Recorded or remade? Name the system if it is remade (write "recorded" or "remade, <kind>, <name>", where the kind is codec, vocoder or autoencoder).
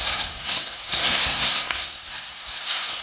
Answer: remade, codec, SNAC